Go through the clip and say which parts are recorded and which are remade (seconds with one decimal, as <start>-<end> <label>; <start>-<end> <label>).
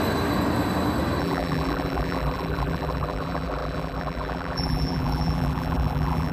0.0-1.2 recorded; 1.2-6.3 remade